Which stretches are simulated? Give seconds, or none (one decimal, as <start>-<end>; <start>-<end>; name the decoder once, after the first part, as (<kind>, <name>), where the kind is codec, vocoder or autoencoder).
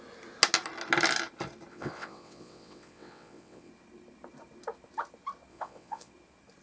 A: 1.7-3.7 (vocoder, WaveNeXt); 5.5-6.1